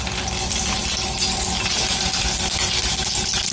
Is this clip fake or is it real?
real